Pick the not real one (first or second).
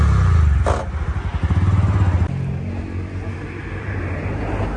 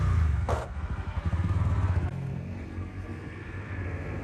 second